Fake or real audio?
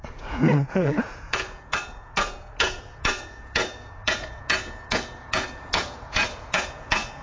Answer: fake